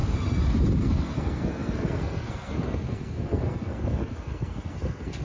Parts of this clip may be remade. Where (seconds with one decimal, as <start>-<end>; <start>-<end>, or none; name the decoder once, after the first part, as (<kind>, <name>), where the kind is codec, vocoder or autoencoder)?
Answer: 0.8-5.2 (codec, SNAC)